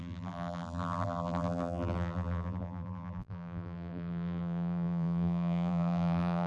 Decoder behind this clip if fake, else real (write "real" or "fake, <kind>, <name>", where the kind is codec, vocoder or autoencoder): fake, vocoder, BigVGAN v2